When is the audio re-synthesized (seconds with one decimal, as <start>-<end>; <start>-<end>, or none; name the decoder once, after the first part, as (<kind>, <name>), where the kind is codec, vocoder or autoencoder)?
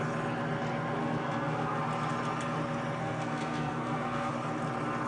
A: 1.0-1.8 (codec, SNAC); 3.0-4.3